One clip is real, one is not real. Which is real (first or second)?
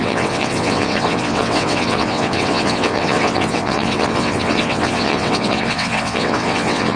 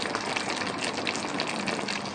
second